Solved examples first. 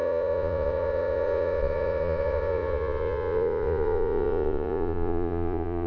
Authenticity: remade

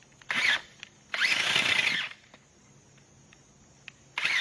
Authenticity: recorded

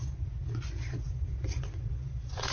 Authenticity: remade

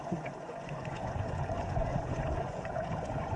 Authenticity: remade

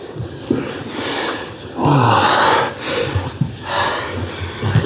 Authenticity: recorded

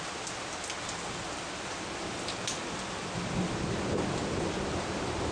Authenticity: recorded